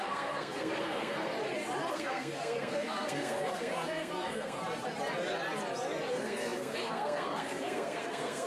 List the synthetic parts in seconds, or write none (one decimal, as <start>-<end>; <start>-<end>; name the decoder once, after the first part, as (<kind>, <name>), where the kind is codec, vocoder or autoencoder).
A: 0.0-1.3 (codec, SNAC); 1.9-4.6; 6.1-8.5